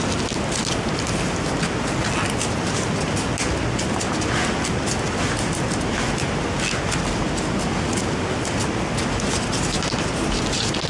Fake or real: real